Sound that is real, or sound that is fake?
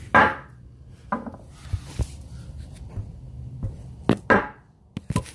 real